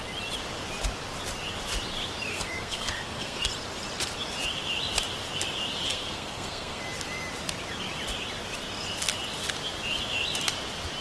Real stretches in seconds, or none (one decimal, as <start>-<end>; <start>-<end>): 0.0-2.3; 3.5-5.9; 6.8-11.0